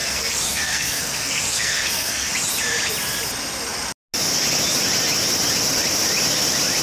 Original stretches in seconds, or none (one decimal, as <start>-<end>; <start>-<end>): 2.3-6.8